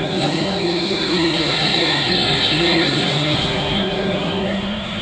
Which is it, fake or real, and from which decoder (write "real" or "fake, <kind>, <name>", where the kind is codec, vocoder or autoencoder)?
fake, codec, SNAC